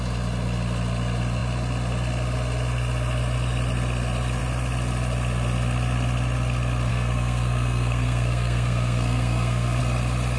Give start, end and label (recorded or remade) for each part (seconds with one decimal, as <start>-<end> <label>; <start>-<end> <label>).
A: 0.0-6.9 recorded; 6.9-9.8 remade; 9.8-10.4 recorded